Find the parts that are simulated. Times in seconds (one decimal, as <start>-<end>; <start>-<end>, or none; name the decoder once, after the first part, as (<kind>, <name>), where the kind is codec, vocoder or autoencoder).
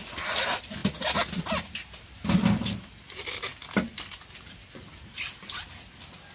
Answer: none